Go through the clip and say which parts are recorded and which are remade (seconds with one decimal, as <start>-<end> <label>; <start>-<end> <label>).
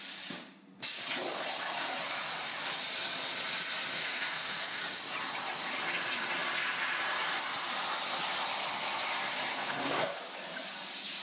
0.0-4.0 recorded; 4.0-4.8 remade; 4.8-9.5 recorded; 9.5-10.2 remade; 10.2-11.2 recorded